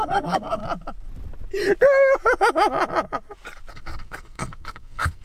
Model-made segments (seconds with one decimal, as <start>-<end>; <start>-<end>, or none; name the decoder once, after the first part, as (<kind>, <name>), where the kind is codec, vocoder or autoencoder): 0.0-0.6 (codec, SNAC); 3.7-5.2